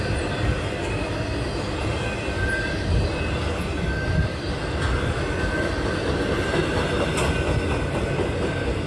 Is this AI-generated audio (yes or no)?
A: no